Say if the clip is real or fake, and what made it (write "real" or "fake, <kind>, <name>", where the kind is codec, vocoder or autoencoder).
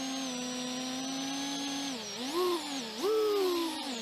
real